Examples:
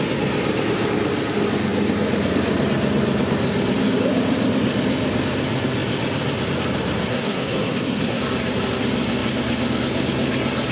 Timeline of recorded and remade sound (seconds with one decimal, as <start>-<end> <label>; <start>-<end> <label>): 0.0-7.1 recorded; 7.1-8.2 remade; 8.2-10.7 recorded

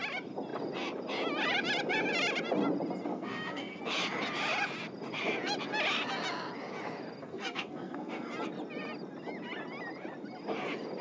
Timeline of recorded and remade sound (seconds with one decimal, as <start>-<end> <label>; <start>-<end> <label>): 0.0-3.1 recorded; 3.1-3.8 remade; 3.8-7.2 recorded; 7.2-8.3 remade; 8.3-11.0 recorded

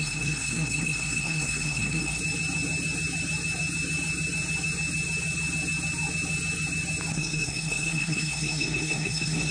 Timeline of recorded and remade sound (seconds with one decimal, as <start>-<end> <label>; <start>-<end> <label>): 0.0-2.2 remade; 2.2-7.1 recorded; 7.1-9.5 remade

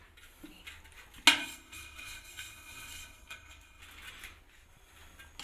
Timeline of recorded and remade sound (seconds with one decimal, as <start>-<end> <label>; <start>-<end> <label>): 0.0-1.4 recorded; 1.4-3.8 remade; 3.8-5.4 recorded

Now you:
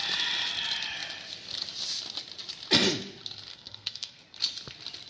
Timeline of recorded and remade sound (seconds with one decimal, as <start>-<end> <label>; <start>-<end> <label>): 0.0-3.5 recorded; 3.5-4.2 remade; 4.2-5.1 recorded

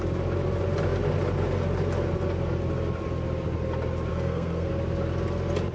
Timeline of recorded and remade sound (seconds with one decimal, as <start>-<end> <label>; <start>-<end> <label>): 0.0-4.1 recorded; 4.1-4.7 remade; 4.7-5.7 recorded

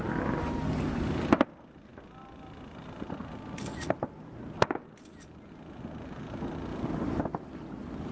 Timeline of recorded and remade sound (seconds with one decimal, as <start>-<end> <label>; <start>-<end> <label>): 0.0-8.1 recorded